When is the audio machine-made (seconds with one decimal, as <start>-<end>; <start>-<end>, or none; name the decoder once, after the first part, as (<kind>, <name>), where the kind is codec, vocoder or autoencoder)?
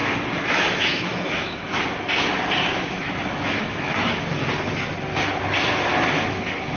0.5-1.8 (autoencoder, DAC-VAE); 2.6-4.4; 6.2-6.8